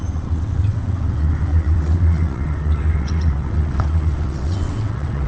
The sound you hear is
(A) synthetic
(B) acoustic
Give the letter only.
A